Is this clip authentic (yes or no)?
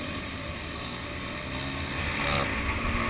yes